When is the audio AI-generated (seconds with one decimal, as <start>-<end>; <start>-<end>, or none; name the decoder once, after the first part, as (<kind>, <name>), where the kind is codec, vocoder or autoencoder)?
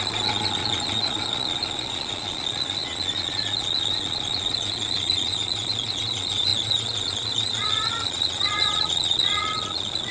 0.0-10.1 (vocoder, Vocos)